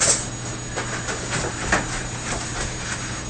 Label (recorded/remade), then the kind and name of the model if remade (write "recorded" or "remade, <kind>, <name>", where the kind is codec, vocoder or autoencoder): recorded